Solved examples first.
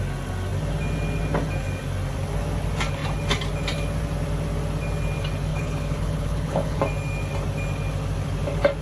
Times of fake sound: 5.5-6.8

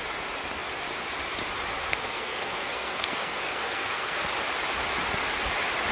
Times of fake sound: 1.8-4.2

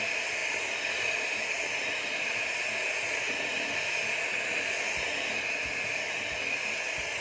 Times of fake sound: none

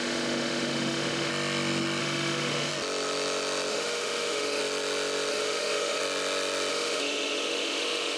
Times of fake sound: 0.0-1.3; 2.0-2.7; 3.7-4.6; 5.3-6.0; 6.7-8.2

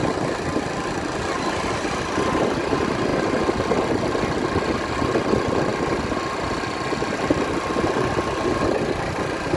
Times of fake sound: none

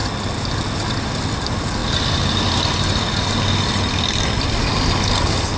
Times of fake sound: none